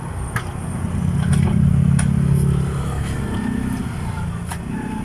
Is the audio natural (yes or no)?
yes